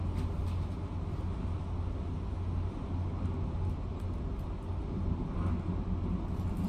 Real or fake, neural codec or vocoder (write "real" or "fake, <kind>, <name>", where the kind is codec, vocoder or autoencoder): real